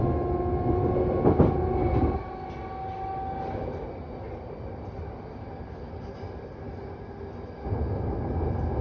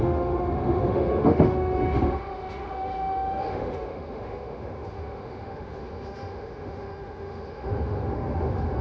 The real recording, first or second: first